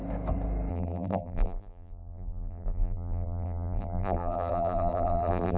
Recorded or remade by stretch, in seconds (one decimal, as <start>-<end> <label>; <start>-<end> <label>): 0.0-0.7 recorded; 0.7-5.6 remade